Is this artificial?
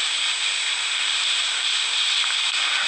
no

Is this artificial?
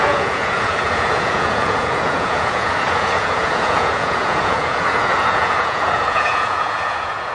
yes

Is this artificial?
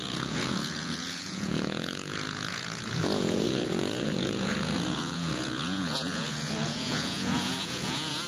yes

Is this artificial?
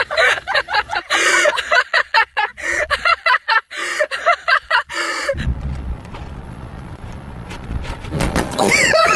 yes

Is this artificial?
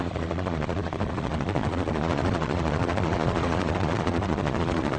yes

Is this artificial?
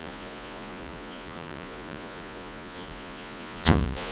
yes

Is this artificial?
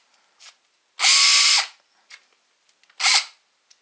no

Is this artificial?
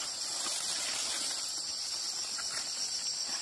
no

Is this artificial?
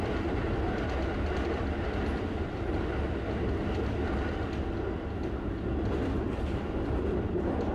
no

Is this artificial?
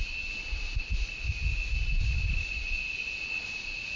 no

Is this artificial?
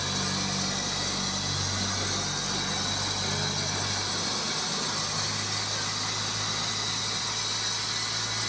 no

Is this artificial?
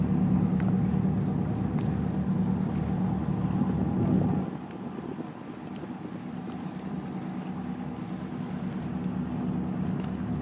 no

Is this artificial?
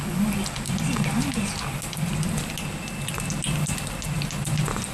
no